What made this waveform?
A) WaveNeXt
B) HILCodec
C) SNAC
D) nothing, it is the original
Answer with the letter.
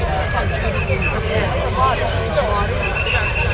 D